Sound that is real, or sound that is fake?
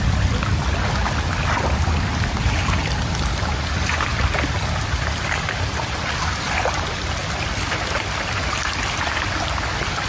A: real